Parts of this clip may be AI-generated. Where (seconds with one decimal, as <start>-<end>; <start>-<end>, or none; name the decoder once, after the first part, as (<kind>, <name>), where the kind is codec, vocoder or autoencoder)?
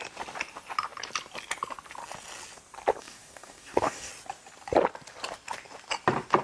3.0-4.1 (codec, DAC)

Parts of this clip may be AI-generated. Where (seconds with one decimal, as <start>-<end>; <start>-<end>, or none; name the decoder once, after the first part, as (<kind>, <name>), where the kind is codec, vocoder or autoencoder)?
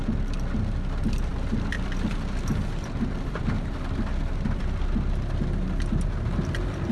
1.3-5.4 (vocoder, BigVGAN v2)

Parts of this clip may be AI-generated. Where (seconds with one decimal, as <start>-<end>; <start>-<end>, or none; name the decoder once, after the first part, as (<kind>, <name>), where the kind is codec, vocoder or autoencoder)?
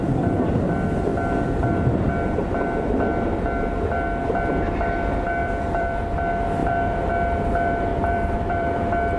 5.4-6.0 (vocoder, BigVGAN v2); 6.6-7.1; 7.9-8.7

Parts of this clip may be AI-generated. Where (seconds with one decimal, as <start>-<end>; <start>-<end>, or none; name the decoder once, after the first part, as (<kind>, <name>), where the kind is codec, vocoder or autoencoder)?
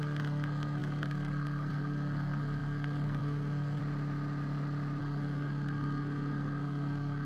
0.0-3.8 (codec, SNAC); 5.0-7.2